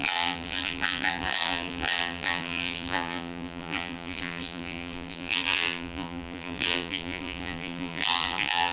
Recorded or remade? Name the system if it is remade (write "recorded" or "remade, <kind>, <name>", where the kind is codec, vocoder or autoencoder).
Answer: remade, vocoder, BigVGAN v2